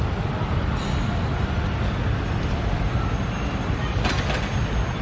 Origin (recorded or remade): recorded